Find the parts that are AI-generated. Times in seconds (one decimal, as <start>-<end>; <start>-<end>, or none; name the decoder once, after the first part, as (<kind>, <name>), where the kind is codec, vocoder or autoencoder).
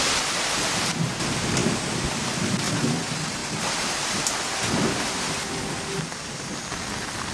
none